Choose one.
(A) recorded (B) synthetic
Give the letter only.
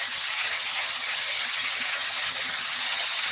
B